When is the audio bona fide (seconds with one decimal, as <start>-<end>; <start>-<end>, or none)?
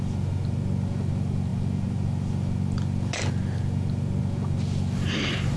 0.0-5.6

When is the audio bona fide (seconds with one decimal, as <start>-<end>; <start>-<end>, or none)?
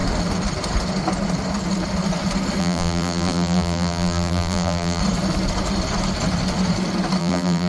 0.0-2.6; 5.0-7.2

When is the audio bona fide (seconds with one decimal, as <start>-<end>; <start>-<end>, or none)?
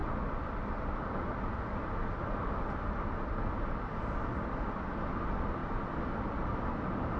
0.0-7.2